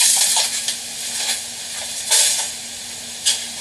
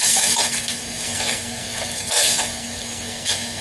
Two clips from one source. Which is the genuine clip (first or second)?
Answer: first